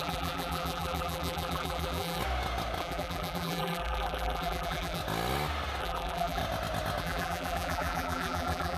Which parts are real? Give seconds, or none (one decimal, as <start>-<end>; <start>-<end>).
2.2-2.8; 5.0-5.8; 6.4-7.0